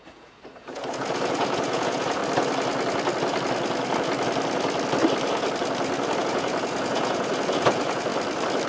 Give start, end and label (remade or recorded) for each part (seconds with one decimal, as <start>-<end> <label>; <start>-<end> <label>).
0.0-2.2 remade; 2.2-6.2 recorded; 6.2-8.1 remade; 8.1-8.7 recorded

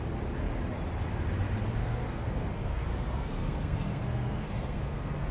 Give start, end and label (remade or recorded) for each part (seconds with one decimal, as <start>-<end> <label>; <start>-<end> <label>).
0.0-1.8 recorded; 1.8-5.3 remade